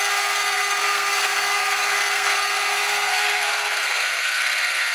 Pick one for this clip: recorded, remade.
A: remade